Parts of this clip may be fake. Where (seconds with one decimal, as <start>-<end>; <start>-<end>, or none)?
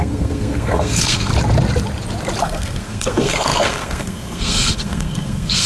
0.0-1.3; 2.4-5.7